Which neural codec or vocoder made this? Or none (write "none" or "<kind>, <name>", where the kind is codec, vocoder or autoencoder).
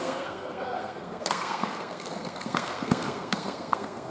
codec, SNAC